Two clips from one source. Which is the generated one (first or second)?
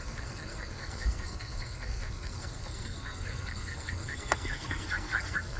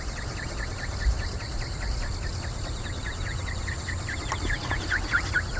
first